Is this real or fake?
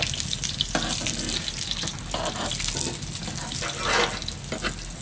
real